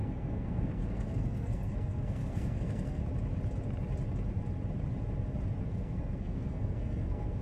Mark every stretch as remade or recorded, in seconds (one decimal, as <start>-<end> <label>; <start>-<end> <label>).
0.0-3.0 remade; 3.0-5.6 recorded; 5.6-7.4 remade